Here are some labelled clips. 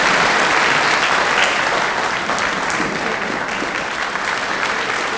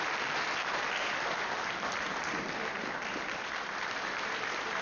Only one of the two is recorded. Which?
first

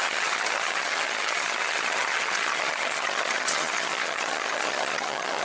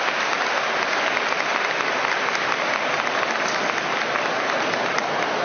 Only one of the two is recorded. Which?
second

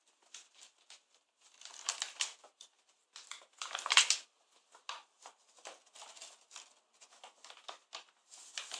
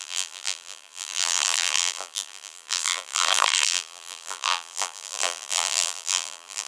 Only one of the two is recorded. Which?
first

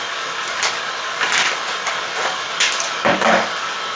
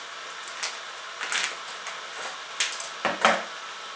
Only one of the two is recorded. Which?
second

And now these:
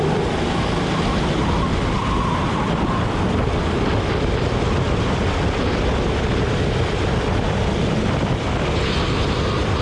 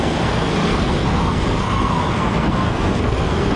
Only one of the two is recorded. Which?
first